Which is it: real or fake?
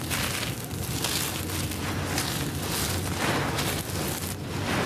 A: real